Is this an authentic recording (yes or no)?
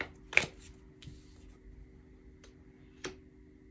yes